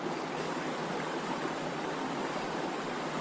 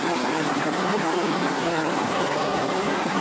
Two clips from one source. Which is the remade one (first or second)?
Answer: second